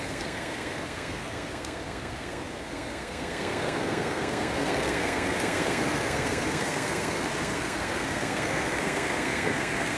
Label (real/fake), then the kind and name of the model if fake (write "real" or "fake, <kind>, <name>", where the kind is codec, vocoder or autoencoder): fake, codec, SNAC